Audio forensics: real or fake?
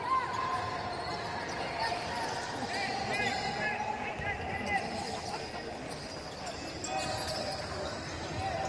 real